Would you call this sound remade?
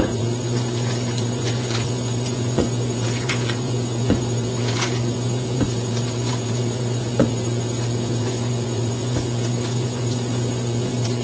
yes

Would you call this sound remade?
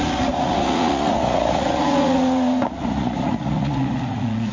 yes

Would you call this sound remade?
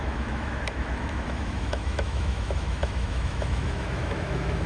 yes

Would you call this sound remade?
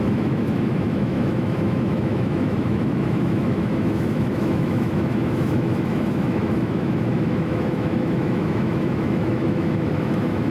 yes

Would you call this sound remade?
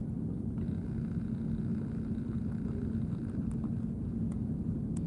no